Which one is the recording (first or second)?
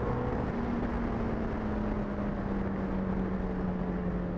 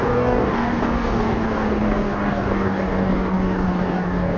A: first